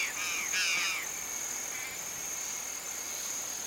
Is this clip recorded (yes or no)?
yes